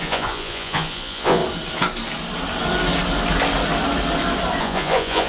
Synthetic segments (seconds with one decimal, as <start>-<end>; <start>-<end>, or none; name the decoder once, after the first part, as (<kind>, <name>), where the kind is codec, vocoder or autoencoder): 0.0-1.4 (vocoder, Vocos); 4.6-5.3